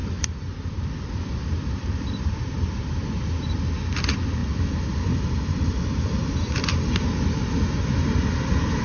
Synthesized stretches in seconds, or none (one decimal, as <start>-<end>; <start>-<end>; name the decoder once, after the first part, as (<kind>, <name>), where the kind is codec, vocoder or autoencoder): 0.0-2.8 (vocoder, BigVGAN v2); 4.4-7.0